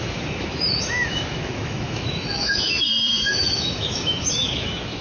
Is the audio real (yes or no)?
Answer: no